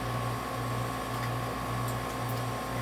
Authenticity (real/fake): real